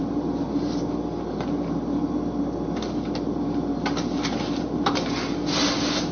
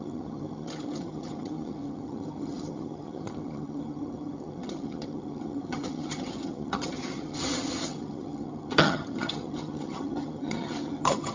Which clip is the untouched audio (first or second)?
first